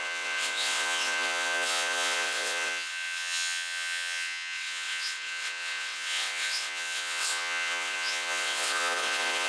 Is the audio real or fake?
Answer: fake